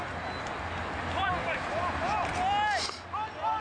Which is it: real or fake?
real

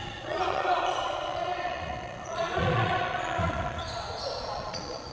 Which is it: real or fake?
fake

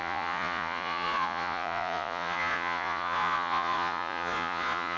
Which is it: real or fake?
fake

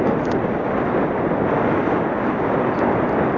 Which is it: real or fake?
real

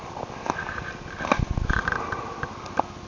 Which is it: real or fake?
real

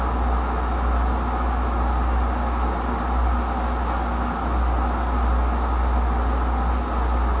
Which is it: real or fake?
real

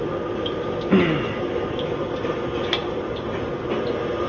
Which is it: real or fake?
real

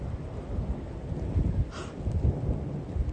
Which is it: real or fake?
real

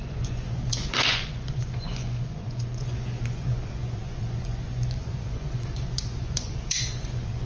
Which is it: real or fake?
fake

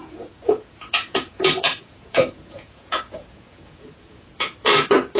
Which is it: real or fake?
fake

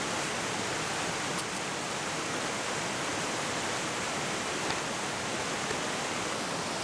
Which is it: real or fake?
real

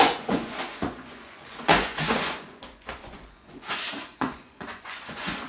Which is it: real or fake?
fake